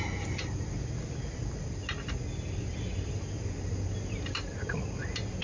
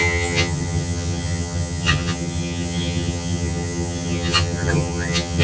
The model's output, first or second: second